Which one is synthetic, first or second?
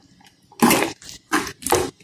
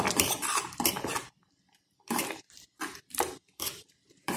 second